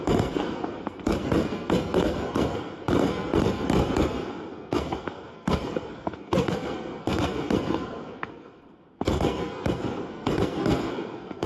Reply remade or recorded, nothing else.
remade